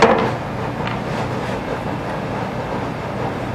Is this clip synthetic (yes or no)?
no